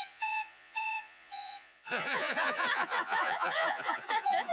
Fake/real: fake